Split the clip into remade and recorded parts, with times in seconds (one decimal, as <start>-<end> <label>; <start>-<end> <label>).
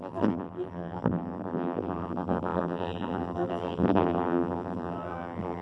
0.0-5.6 remade